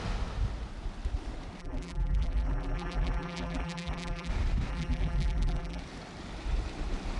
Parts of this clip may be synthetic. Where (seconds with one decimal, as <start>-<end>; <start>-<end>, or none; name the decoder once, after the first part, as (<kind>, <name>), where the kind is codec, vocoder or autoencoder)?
1.6-4.3 (vocoder, BigVGAN v2); 4.7-5.8